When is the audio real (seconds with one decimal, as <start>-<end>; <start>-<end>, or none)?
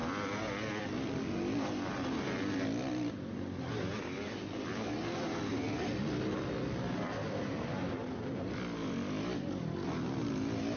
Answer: 0.0-10.8